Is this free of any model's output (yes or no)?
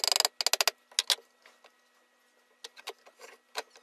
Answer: yes